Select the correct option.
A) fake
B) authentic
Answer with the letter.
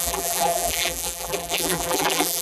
A